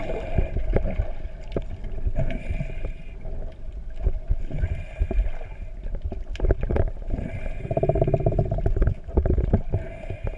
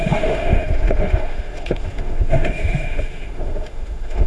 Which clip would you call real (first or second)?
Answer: first